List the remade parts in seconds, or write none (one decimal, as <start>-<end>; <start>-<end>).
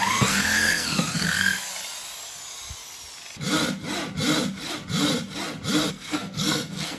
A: 0.0-1.7; 5.9-7.0